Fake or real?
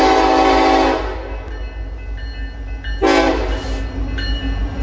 real